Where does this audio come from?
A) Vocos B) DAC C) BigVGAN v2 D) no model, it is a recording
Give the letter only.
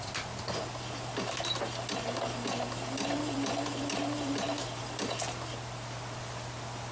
D